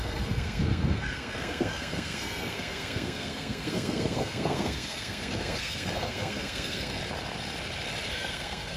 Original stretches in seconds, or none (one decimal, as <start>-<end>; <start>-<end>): 7.0-8.1